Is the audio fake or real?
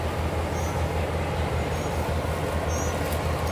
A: real